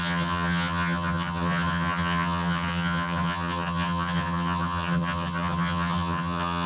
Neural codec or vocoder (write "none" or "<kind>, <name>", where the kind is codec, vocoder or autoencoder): vocoder, HiFi-GAN